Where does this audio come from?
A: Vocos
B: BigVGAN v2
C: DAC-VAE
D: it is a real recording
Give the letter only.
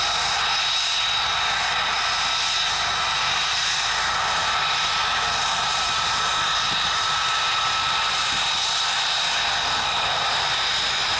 D